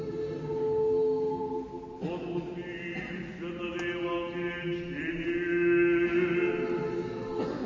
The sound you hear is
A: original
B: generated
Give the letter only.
A